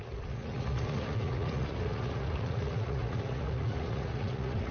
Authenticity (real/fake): fake